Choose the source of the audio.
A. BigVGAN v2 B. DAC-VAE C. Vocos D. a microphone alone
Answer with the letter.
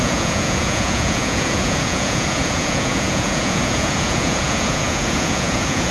C